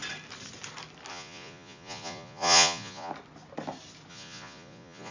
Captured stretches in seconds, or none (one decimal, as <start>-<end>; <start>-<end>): 0.0-1.1; 3.1-4.1